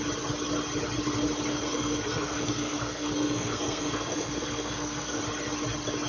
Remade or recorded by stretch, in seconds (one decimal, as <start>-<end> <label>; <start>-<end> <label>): 0.0-1.5 recorded; 1.5-5.2 remade; 5.2-6.1 recorded

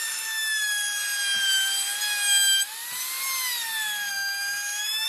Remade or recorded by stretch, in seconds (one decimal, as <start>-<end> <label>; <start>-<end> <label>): 0.0-1.0 remade; 1.0-4.1 recorded; 4.1-5.1 remade

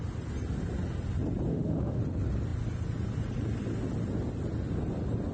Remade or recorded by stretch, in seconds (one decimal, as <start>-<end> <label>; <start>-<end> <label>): 0.0-1.5 recorded; 1.5-2.0 remade; 2.0-5.3 recorded

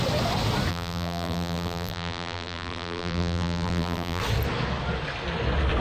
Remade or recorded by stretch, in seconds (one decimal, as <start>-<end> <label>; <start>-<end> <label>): 0.0-0.7 recorded; 0.7-4.2 remade; 4.2-5.8 recorded

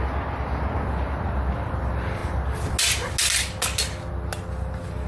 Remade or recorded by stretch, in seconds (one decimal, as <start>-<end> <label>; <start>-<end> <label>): 0.0-5.1 recorded

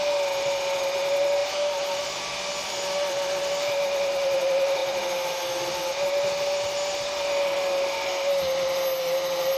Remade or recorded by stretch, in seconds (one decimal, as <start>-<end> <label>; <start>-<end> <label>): 0.0-9.6 recorded

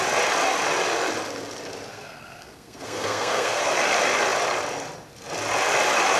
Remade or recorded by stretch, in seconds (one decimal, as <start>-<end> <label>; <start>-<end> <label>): 0.0-1.9 recorded; 1.9-3.6 remade; 3.6-6.2 recorded